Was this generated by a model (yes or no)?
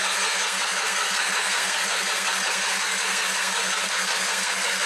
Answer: yes